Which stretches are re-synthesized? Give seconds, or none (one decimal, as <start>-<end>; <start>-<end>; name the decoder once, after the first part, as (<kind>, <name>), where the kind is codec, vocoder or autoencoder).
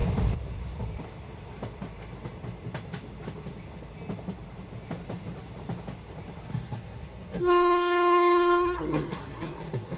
6.5-10.0 (codec, SNAC)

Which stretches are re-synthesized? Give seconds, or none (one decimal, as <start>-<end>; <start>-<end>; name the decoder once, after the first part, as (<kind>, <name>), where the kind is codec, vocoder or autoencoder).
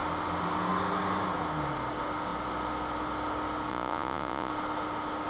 3.7-4.5 (vocoder, Vocos)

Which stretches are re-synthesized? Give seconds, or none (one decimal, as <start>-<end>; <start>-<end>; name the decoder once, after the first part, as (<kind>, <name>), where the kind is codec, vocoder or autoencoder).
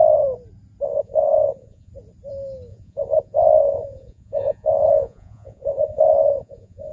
0.9-1.9 (vocoder, Vocos); 2.7-6.9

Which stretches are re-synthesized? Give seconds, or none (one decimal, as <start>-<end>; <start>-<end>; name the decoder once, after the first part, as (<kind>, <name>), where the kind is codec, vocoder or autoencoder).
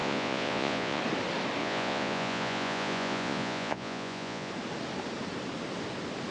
0.0-1.0 (vocoder, Vocos); 1.6-4.5